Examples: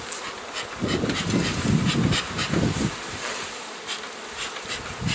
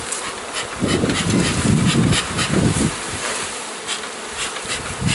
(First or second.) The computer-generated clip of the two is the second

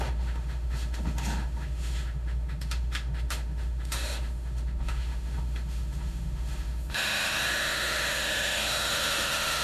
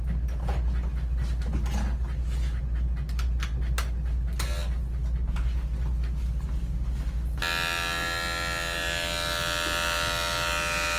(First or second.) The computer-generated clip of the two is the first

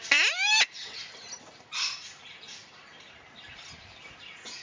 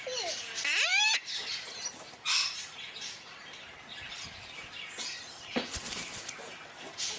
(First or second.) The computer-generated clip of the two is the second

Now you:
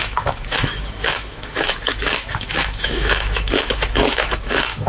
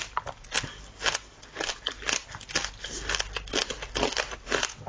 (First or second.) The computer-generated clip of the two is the first